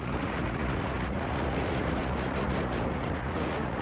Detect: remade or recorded remade